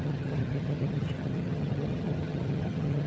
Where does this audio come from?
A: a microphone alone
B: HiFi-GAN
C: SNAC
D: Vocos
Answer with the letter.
B